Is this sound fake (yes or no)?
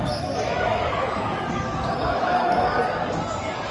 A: yes